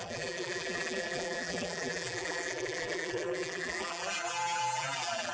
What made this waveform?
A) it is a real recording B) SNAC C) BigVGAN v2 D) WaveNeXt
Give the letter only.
C